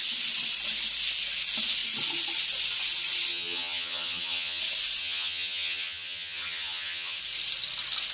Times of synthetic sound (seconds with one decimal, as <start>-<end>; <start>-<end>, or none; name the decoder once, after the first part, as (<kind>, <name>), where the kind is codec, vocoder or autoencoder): 3.3-4.6 (vocoder, HiFi-GAN); 5.0-7.2